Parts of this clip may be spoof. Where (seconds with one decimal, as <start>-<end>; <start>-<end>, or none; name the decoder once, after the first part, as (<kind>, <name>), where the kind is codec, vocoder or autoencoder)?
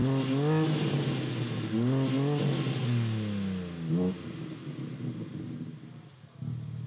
none